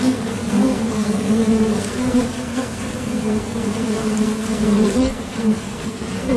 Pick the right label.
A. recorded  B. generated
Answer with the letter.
B